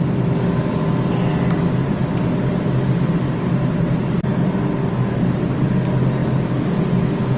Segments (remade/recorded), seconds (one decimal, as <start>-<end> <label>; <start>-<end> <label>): 0.0-7.4 recorded